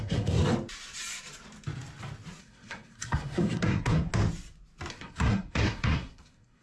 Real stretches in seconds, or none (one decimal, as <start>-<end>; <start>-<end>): 0.4-2.4; 4.1-4.9